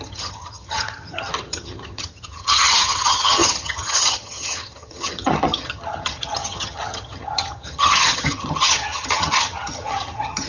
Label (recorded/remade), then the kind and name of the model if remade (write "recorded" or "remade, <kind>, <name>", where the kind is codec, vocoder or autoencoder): remade, vocoder, HiFi-GAN